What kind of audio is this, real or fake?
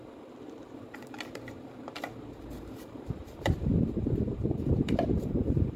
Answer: fake